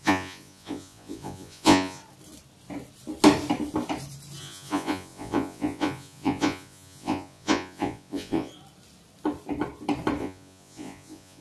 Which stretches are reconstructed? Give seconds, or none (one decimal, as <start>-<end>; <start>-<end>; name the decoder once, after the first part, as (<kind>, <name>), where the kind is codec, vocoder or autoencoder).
0.0-2.0 (vocoder, Vocos); 4.4-8.5; 10.2-11.4